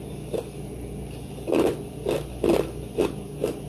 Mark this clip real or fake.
real